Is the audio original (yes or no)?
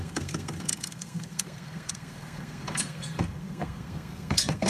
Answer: no